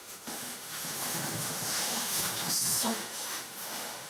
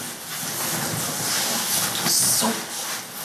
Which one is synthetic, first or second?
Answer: first